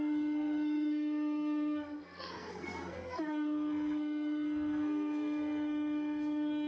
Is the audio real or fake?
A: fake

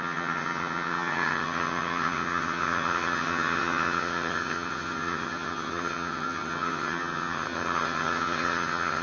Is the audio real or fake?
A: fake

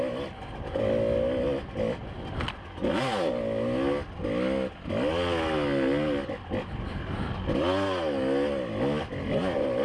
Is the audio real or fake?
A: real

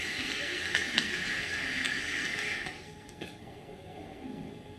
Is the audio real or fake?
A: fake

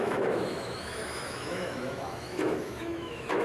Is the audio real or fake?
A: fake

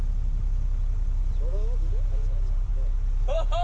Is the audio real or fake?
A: real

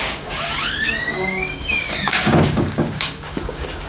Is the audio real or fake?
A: fake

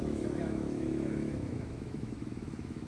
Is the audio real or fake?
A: fake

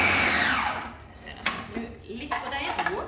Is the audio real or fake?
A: real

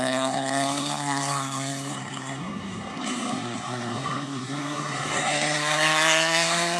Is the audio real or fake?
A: fake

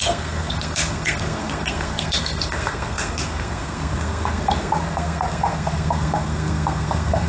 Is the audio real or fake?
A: fake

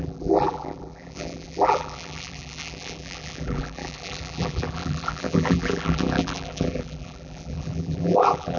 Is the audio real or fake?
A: fake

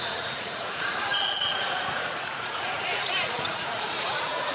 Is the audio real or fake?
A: fake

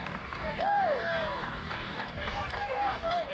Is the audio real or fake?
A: fake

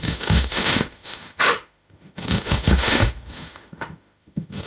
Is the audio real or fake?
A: fake